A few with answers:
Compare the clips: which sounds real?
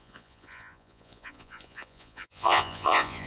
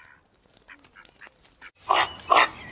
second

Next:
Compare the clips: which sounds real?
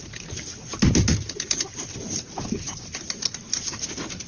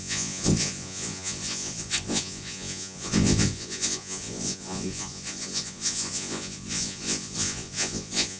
first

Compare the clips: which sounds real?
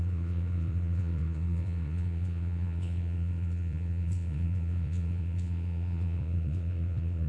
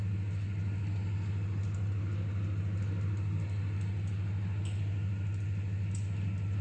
second